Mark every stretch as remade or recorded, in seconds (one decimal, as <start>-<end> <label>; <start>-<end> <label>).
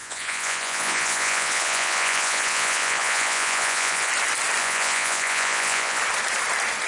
0.0-4.1 remade; 4.1-4.6 recorded; 4.6-6.0 remade; 6.0-6.9 recorded